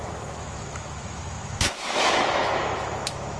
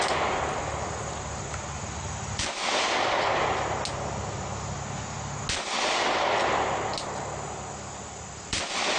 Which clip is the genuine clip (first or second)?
second